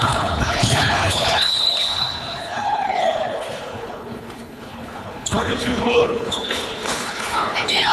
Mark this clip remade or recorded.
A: remade